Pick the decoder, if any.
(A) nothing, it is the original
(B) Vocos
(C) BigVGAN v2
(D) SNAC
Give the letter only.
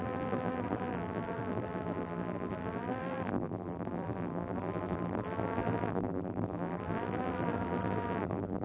C